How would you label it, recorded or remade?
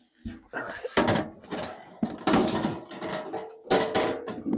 recorded